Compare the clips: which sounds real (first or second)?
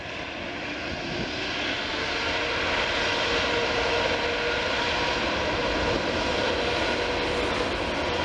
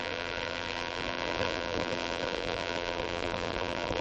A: first